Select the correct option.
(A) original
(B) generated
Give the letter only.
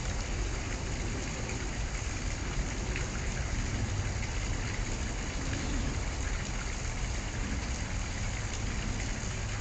A